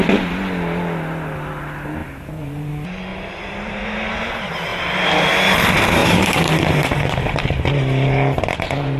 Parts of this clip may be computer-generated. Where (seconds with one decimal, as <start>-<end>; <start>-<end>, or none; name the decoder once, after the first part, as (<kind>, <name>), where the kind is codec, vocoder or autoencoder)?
2.0-2.7 (vocoder, BigVGAN v2); 3.1-3.8; 4.7-5.3; 6.0-9.0